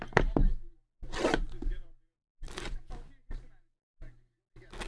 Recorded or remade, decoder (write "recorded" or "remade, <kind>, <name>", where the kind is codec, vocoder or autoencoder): recorded